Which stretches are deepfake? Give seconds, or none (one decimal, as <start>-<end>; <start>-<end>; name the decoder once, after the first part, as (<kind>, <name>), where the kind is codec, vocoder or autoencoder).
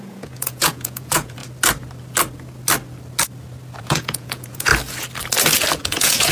0.0-1.4 (vocoder, Vocos); 3.8-4.7; 5.8-6.3